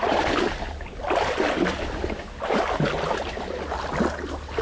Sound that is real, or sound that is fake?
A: real